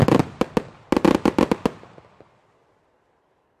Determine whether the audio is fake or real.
real